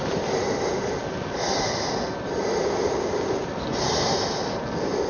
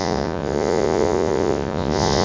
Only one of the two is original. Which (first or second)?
first